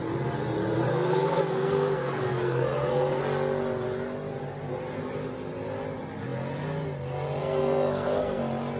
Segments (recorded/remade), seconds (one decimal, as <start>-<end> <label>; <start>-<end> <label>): 0.0-0.9 recorded; 0.9-3.2 remade; 3.2-7.4 recorded; 7.4-8.4 remade; 8.4-8.8 recorded